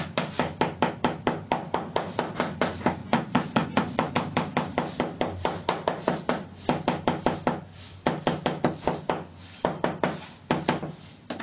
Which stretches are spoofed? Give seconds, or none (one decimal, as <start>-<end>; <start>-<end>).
3.0-4.1